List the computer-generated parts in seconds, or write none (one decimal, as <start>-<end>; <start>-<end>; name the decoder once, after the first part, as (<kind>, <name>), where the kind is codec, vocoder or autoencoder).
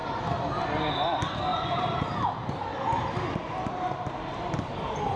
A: none